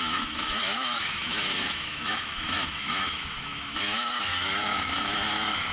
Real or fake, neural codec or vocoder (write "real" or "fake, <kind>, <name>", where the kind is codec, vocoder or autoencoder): fake, autoencoder, DAC-VAE